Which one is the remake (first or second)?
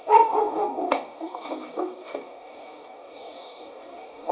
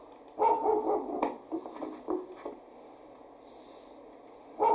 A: first